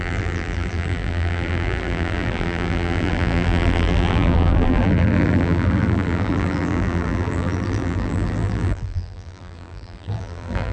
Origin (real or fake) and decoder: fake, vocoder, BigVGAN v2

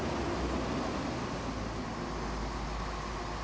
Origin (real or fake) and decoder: real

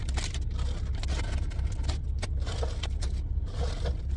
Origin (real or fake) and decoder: real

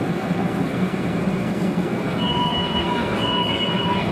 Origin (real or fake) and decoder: fake, codec, SNAC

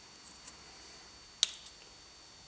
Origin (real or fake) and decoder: real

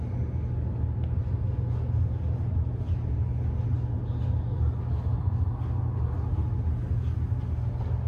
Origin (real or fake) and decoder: real